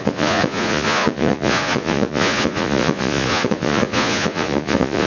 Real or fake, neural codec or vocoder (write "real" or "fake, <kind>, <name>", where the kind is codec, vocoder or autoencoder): fake, vocoder, Vocos